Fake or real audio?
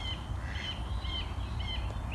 real